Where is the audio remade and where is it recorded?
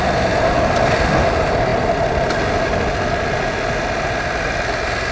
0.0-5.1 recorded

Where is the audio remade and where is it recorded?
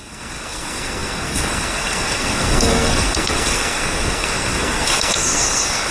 0.0-5.9 remade